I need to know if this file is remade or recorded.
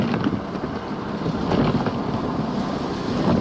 recorded